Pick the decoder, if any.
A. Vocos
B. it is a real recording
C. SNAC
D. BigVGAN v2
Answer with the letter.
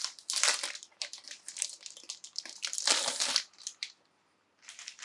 D